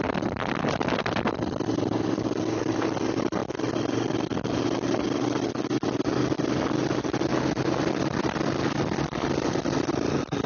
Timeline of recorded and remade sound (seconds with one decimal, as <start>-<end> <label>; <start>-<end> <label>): 0.0-10.5 recorded